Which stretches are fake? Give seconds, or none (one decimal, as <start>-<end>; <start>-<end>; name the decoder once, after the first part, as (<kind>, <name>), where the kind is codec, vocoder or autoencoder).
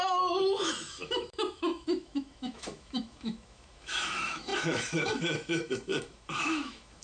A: 0.0-7.0 (autoencoder, DAC-VAE)